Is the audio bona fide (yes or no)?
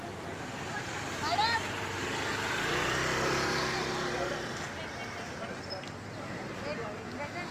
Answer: yes